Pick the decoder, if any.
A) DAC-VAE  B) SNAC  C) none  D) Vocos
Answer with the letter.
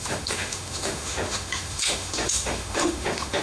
A